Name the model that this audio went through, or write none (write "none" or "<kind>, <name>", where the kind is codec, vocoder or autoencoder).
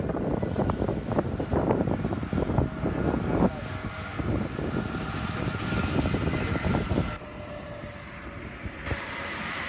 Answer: none